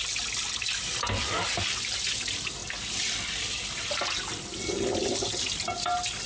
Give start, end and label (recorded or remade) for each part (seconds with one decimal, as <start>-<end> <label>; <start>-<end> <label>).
0.0-6.3 recorded